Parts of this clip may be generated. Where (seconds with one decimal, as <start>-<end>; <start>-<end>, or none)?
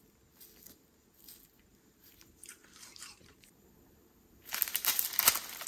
1.7-5.1